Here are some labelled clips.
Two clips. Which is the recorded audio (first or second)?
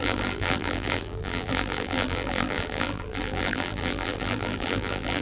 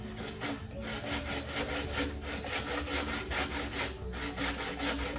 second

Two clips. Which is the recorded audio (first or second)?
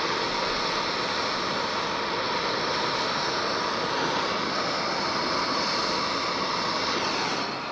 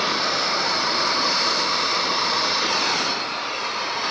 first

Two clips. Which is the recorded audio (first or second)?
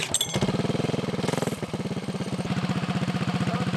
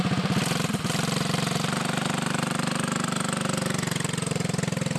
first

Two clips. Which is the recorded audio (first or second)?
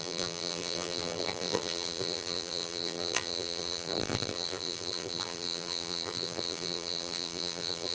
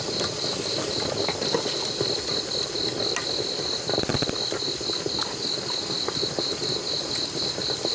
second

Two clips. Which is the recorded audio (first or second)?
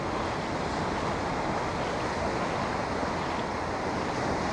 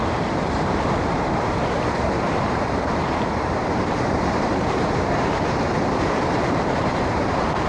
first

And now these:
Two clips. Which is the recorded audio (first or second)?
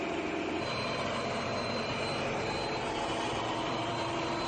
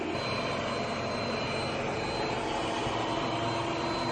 second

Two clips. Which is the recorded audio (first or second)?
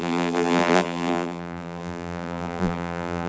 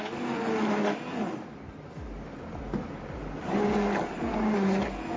second